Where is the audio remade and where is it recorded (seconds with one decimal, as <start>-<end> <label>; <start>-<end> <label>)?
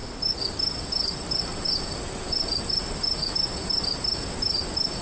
0.0-5.0 recorded